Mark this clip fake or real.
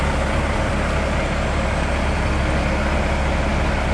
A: real